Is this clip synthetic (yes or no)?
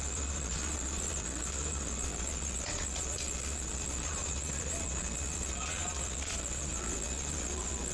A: yes